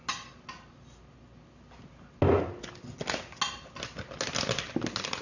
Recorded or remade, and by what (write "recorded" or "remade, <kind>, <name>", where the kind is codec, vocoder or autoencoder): recorded